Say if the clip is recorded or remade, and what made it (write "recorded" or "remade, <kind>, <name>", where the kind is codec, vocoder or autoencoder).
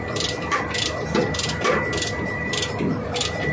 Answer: remade, vocoder, BigVGAN v2